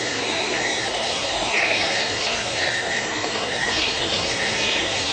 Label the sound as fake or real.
fake